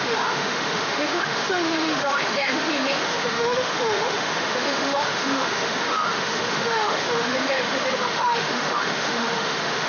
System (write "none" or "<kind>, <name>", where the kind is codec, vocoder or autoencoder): autoencoder, DAC-VAE